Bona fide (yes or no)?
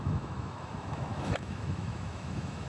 no